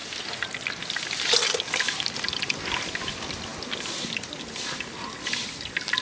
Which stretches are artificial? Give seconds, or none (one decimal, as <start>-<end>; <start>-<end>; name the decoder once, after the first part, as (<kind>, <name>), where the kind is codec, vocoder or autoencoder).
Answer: none